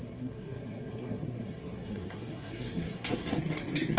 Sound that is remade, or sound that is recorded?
remade